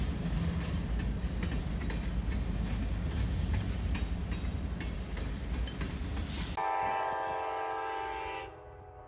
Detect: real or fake real